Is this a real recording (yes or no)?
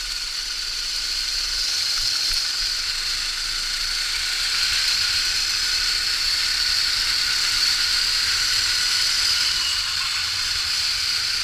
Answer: yes